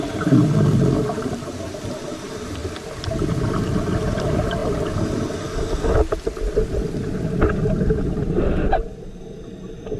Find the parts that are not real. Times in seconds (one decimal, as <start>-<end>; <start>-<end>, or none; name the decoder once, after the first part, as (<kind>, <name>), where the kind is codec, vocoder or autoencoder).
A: none